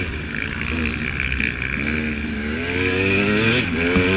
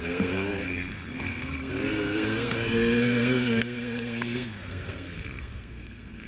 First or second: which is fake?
second